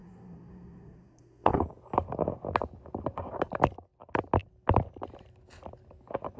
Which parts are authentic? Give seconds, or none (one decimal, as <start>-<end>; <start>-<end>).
1.6-6.4